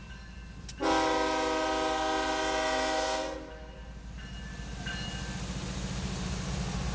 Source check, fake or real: real